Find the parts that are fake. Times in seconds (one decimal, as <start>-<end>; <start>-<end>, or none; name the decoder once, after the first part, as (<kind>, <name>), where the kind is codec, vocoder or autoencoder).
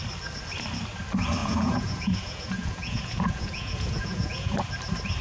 1.4-4.5 (vocoder, Vocos)